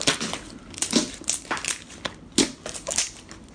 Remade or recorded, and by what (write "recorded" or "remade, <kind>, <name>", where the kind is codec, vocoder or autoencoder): recorded